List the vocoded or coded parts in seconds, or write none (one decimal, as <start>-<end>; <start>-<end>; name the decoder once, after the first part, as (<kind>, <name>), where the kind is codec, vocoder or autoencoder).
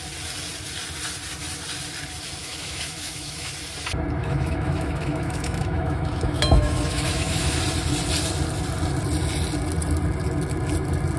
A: 2.4-3.5 (autoencoder, DAC-VAE); 4.2-7.6